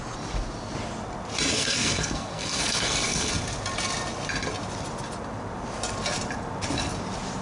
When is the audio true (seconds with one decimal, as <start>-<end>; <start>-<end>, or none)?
0.0-1.5; 3.3-7.4